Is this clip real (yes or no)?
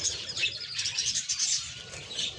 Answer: no